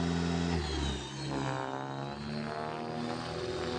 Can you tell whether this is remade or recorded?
recorded